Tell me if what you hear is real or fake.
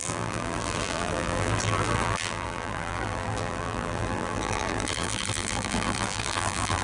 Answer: fake